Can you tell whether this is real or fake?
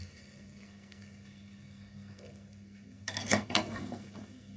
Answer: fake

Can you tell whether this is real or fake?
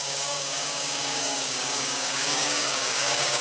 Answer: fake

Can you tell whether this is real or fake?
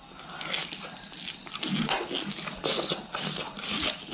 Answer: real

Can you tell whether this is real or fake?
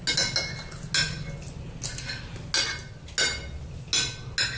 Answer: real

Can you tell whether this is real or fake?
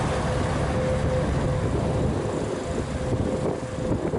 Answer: real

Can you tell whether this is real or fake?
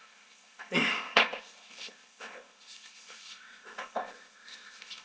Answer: fake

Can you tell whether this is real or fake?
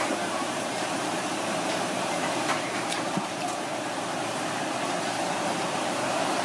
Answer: fake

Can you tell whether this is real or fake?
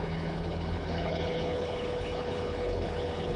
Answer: fake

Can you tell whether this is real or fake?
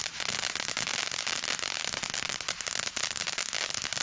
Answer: real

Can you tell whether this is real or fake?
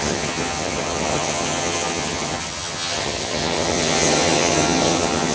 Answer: fake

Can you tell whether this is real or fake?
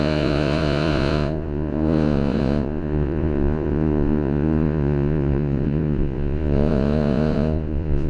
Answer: fake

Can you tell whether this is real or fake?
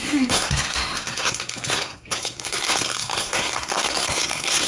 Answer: fake